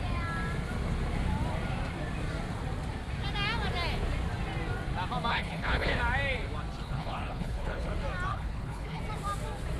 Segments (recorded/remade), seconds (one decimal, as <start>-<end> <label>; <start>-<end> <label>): 0.0-5.3 recorded; 5.3-6.0 remade; 6.0-6.8 recorded; 6.8-7.9 remade; 7.9-8.3 recorded; 8.3-9.0 remade; 9.0-9.8 recorded